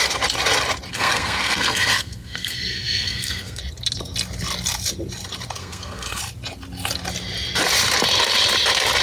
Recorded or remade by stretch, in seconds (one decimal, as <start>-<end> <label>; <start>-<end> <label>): 0.0-0.9 recorded; 0.9-3.6 remade; 3.6-5.6 recorded; 5.6-6.2 remade; 6.2-9.0 recorded